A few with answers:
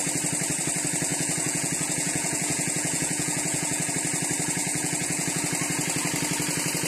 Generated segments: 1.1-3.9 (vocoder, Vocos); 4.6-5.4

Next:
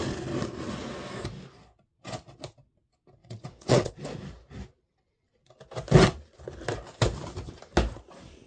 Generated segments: 3.2-3.9 (vocoder, WaveNeXt)

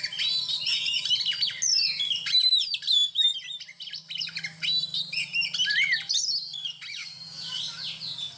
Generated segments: 7.0-7.6 (codec, DAC)

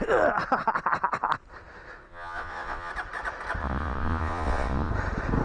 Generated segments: 2.1-2.9 (vocoder, Vocos); 3.6-4.9

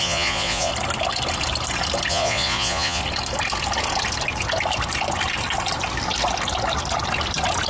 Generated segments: 0.0-0.7 (vocoder, Vocos); 2.1-3.0

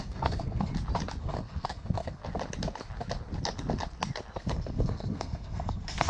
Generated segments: 0.0-0.7 (codec, SNAC); 1.2-2.2; 4.4-6.1